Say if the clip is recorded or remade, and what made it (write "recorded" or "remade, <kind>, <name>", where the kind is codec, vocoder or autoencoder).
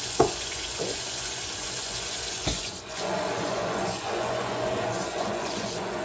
remade, vocoder, Vocos